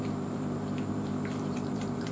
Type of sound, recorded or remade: remade